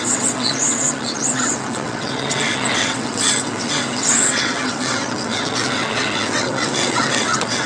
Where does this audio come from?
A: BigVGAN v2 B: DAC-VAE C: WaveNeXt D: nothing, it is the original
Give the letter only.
C